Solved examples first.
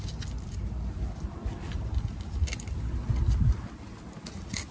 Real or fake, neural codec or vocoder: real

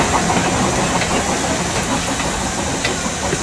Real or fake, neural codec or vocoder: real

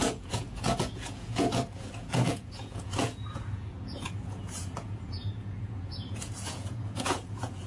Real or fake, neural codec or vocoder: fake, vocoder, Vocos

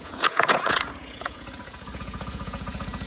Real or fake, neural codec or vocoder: fake, vocoder, Vocos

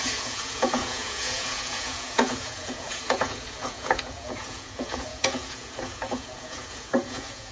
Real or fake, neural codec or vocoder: fake, vocoder, Vocos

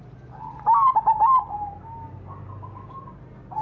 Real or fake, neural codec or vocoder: real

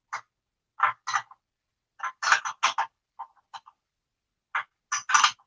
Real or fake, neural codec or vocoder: real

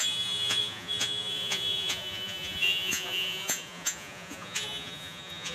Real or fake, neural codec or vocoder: fake, vocoder, Vocos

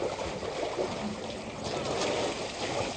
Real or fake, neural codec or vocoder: real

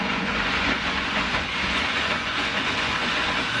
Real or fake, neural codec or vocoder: fake, vocoder, Vocos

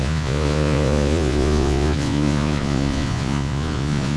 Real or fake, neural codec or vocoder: fake, vocoder, Vocos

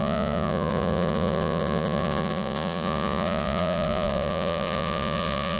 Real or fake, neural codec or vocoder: fake, vocoder, Vocos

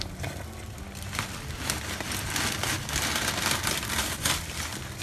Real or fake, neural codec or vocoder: real